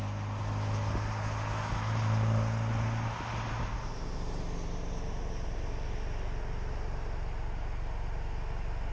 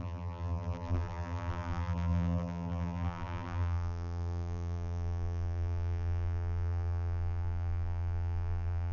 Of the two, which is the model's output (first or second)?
second